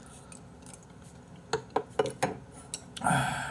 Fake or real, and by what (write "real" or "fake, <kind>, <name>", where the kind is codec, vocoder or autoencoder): real